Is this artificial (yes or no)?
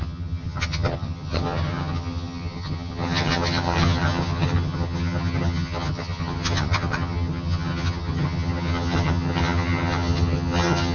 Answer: yes